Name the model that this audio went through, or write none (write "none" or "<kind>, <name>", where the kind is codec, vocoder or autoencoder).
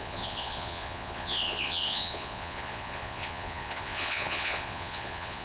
vocoder, Vocos